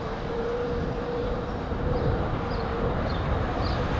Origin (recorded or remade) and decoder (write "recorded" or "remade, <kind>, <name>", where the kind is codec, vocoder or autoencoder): remade, vocoder, BigVGAN v2